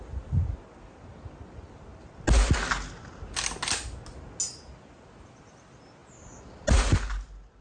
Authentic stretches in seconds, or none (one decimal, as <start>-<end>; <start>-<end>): 0.0-7.6